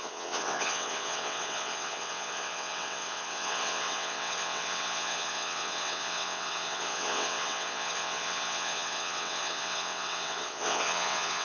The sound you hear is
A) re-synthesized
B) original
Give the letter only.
A